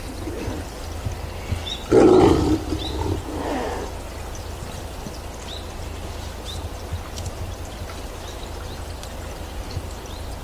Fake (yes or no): no